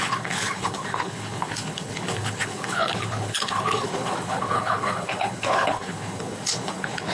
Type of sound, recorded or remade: remade